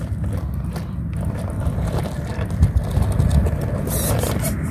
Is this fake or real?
real